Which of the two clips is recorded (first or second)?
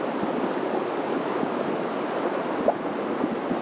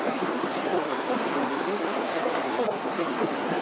first